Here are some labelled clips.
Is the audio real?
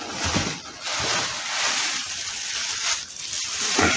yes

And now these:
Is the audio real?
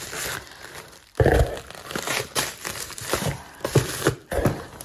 no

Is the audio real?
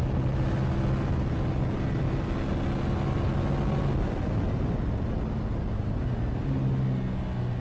yes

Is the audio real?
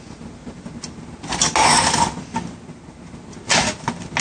yes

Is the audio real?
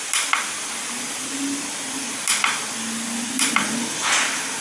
yes